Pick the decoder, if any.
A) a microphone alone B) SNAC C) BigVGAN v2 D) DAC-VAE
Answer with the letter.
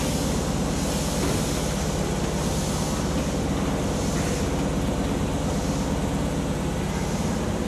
A